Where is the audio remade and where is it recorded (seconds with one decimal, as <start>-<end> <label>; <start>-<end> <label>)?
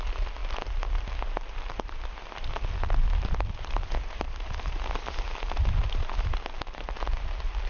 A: 0.0-7.7 recorded